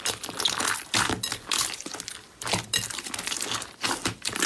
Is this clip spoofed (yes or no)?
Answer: no